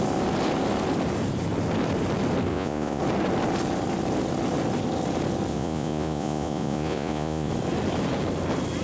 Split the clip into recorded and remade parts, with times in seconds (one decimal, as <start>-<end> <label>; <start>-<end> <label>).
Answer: 0.0-2.5 recorded; 2.5-3.0 remade; 3.0-5.5 recorded; 5.5-7.5 remade; 7.5-8.8 recorded